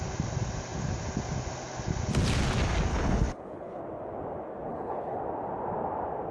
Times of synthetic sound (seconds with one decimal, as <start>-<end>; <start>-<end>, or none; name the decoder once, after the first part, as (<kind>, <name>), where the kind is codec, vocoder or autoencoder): 2.9-3.8 (codec, HILCodec); 4.7-5.2